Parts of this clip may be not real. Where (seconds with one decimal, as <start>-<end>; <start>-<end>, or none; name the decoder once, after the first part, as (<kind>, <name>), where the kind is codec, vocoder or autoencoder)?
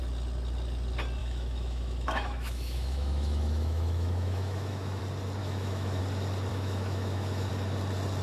1.2-5.0 (autoencoder, DAC-VAE); 5.4-6.0; 6.5-7.5